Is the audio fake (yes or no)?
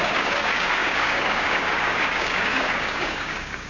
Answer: yes